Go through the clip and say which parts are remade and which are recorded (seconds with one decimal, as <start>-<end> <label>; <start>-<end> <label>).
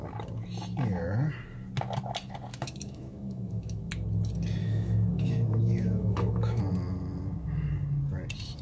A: 0.0-2.5 recorded; 2.5-3.9 remade; 3.9-4.6 recorded; 4.6-6.6 remade; 6.6-8.6 recorded